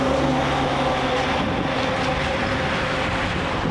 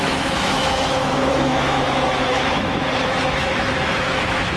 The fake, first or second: second